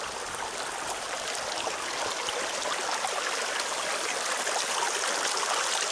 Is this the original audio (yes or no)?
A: yes